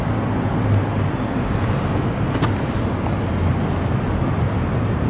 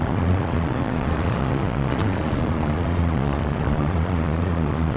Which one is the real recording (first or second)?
first